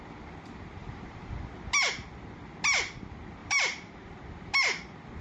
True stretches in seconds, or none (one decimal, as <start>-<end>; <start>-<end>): 0.0-0.8; 1.5-3.4; 4.2-5.2